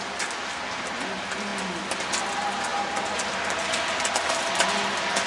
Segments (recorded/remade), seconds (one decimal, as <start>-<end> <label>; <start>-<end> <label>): 0.0-5.3 recorded